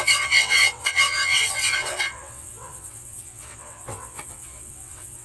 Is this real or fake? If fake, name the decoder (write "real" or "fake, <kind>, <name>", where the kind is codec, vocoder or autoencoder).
fake, vocoder, WaveNeXt